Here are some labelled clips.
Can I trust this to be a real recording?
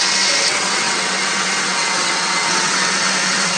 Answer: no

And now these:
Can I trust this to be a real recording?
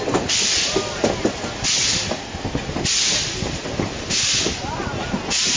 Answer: yes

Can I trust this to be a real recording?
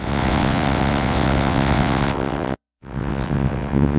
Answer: no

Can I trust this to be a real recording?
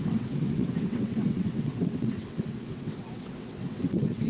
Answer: no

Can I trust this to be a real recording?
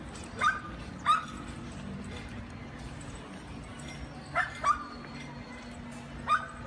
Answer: yes